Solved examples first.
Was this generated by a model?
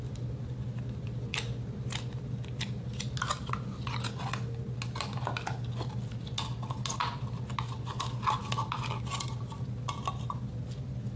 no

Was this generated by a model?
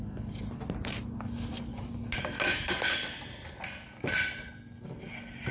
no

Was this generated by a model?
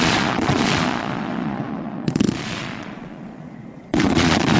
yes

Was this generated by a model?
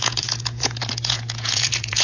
yes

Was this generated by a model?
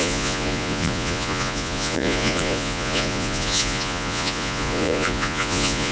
yes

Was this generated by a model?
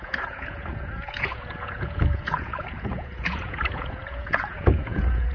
yes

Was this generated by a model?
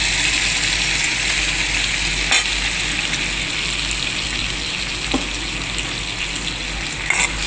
no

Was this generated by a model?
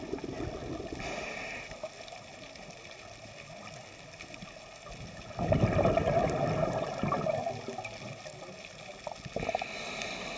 no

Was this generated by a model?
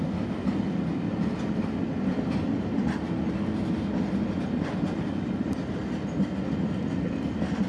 no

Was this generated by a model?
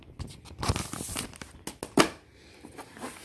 no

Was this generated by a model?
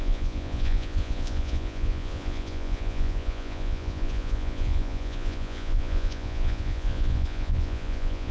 yes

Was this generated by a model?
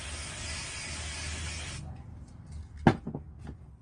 no